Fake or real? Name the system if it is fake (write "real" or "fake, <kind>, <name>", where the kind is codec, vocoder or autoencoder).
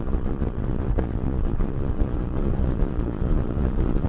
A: fake, vocoder, Vocos